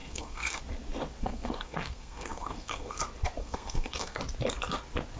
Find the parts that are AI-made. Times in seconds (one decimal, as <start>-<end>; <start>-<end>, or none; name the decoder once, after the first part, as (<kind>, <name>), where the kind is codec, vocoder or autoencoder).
0.0-0.6 (codec, SNAC); 1.2-3.0; 3.4-4.2